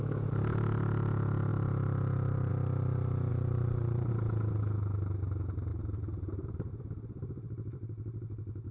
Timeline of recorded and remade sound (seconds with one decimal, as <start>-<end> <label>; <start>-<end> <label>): 0.0-1.5 recorded; 1.5-2.5 remade; 2.5-3.3 recorded; 3.3-4.1 remade; 4.1-5.7 recorded; 5.7-6.7 remade; 6.7-8.7 recorded